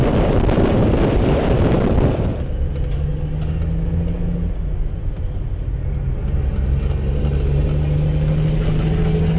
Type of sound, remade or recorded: recorded